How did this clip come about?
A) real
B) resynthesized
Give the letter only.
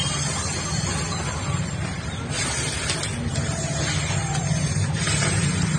A